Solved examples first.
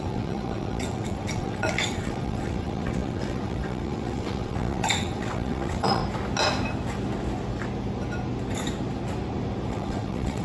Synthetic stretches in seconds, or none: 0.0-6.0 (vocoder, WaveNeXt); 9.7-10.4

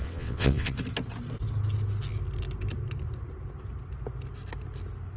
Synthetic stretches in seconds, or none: 0.0-0.8 (vocoder, WaveNeXt)